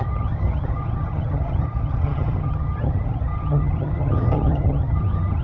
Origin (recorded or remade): remade